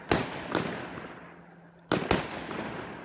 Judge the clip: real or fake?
real